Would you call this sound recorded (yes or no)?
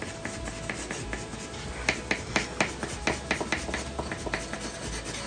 yes